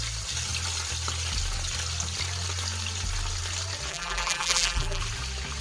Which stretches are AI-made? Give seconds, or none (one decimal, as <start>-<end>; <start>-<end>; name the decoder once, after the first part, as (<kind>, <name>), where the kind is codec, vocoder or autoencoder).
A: 3.9-5.0 (vocoder, BigVGAN v2)